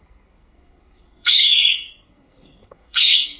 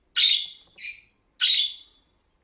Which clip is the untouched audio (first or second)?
second